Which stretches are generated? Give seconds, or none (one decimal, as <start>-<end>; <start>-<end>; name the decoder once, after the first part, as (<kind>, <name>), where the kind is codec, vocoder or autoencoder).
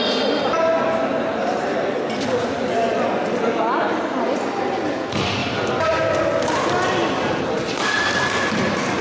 none